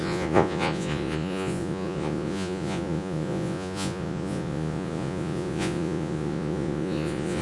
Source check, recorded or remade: remade